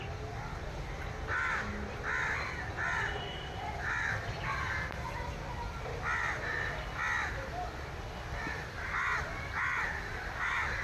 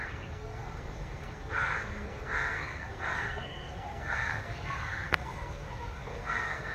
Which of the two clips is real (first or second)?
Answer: first